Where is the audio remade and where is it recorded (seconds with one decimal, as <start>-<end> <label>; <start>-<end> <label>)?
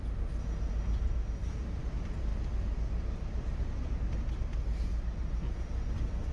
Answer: 0.0-6.3 recorded